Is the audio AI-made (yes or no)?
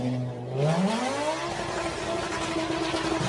no